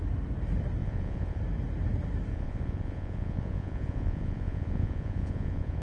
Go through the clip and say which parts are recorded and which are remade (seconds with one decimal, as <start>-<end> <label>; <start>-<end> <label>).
0.0-0.8 recorded; 0.8-1.4 remade; 1.4-2.3 recorded; 2.3-5.8 remade